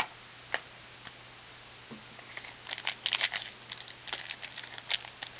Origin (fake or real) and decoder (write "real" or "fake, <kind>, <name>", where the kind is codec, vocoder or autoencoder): real